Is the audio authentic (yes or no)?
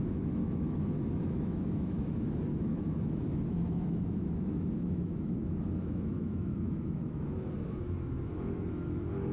no